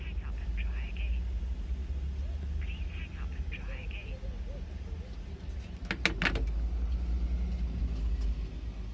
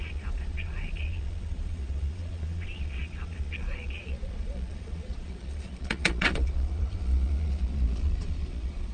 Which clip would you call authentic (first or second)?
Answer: first